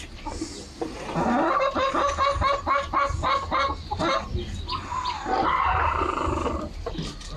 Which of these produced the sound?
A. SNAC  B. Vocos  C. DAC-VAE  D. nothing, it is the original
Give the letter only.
D